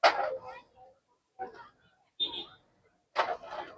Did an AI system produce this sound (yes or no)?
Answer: no